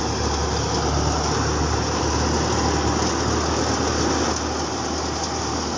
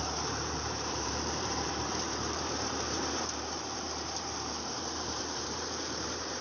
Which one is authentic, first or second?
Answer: first